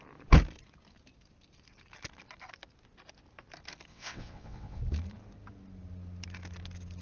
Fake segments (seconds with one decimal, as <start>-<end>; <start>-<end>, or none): 3.9-4.8